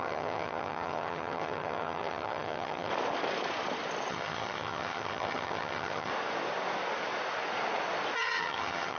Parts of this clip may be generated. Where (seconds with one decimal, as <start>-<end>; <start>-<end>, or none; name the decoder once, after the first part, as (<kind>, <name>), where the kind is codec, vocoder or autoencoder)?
0.0-2.9 (vocoder, HiFi-GAN); 4.1-6.1; 8.2-9.0

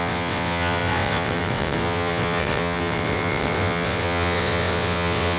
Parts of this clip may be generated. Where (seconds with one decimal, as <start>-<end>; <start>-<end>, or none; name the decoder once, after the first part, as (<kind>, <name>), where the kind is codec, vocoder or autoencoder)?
0.0-5.4 (vocoder, WaveNeXt)

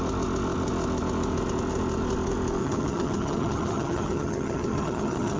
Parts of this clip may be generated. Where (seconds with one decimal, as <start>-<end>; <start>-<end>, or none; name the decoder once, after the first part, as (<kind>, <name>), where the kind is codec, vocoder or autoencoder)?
2.6-5.4 (vocoder, HiFi-GAN)